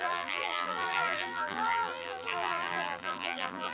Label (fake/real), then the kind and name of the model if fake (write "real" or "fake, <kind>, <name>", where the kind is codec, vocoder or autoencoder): fake, vocoder, BigVGAN v2